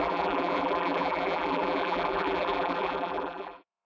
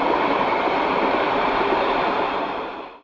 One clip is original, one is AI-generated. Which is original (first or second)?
second